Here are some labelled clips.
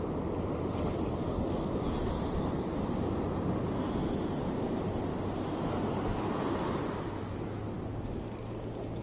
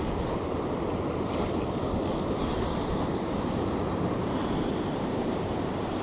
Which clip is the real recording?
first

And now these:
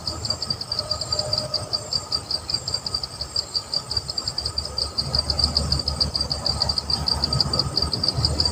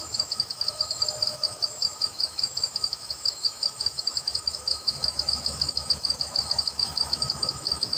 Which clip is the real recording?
first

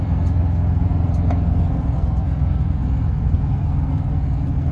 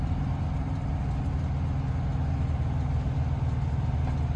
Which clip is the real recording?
second